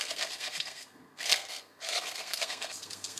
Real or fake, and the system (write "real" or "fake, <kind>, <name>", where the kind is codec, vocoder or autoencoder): fake, codec, SNAC